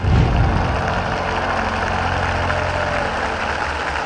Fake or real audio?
real